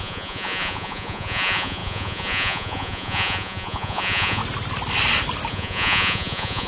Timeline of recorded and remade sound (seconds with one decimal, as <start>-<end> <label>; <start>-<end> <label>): 0.0-4.4 remade; 4.4-5.5 recorded; 5.5-6.7 remade

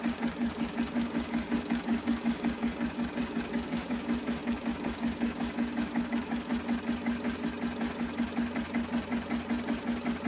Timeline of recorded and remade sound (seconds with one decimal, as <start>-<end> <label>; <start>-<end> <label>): 0.0-6.5 remade; 6.5-10.3 recorded

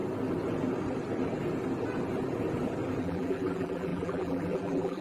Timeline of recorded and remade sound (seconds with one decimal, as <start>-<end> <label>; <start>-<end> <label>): 0.0-3.0 recorded; 3.0-5.0 remade

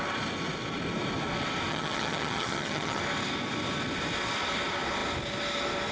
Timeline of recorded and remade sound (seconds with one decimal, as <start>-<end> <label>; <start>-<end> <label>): 0.0-1.7 recorded; 1.7-3.0 remade; 3.0-5.9 recorded

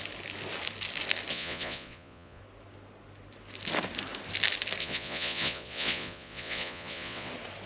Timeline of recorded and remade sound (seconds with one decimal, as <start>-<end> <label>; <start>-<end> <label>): 0.0-1.3 recorded; 1.3-2.4 remade; 2.4-4.8 recorded; 4.8-7.3 remade; 7.3-7.7 recorded